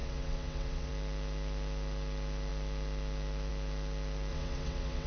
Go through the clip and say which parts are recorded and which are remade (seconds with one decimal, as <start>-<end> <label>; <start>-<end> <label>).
0.0-0.9 remade; 0.9-4.3 recorded; 4.3-5.1 remade